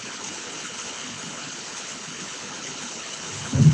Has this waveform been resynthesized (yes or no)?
yes